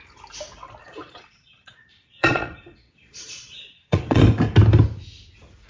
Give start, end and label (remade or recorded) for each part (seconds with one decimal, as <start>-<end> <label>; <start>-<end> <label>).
0.0-0.8 recorded; 0.8-4.2 remade; 4.2-5.7 recorded